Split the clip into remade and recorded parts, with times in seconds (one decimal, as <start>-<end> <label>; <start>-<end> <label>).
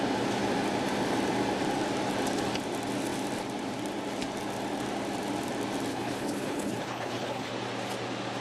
0.0-5.9 recorded; 5.9-7.5 remade; 7.5-8.4 recorded